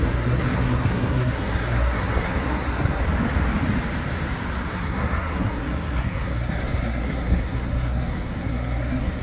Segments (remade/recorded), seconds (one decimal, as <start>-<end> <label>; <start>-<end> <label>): 0.0-3.0 remade; 3.0-4.7 recorded; 4.7-9.2 remade